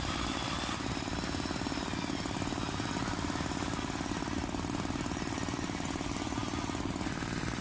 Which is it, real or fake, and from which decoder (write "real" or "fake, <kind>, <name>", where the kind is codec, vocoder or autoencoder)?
real